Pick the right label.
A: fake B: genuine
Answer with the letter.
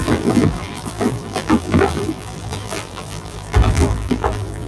A